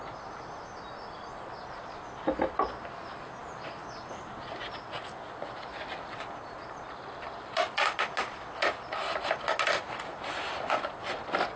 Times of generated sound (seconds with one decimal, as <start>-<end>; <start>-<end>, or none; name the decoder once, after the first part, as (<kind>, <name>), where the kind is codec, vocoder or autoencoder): none